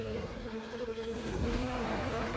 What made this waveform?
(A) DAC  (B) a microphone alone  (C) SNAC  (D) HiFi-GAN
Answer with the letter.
C